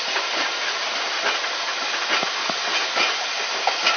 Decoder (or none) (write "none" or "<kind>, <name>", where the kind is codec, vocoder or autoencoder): none